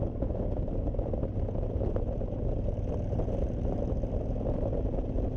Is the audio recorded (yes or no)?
yes